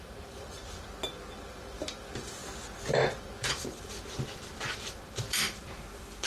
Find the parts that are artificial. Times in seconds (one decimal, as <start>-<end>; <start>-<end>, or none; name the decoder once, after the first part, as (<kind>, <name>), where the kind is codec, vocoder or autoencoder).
0.0-0.6 (vocoder, BigVGAN v2); 1.3-2.4; 2.9-6.3